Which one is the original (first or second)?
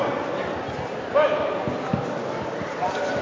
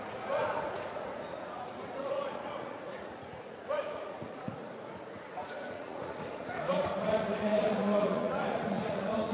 first